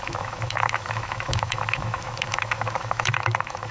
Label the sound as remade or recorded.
remade